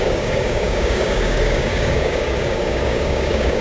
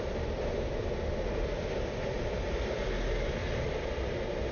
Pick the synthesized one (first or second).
first